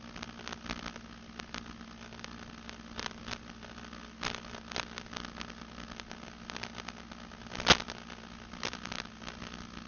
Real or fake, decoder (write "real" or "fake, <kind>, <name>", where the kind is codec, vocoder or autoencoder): real